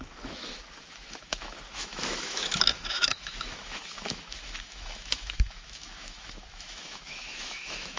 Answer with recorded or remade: remade